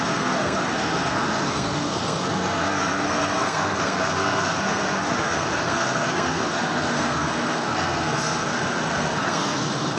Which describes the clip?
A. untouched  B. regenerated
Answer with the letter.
B